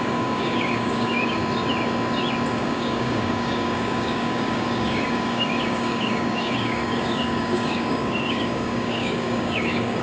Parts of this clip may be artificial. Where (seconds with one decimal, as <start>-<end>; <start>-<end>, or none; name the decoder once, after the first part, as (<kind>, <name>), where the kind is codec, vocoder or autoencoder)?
0.0-1.4 (codec, DAC); 2.5-10.0